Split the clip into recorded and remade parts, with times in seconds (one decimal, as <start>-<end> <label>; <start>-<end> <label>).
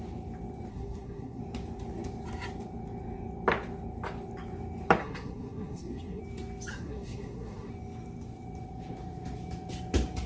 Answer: 0.0-0.7 recorded; 0.7-1.4 remade; 1.4-5.0 recorded; 5.0-6.2 remade; 6.2-6.7 recorded; 6.7-7.7 remade; 7.7-10.3 recorded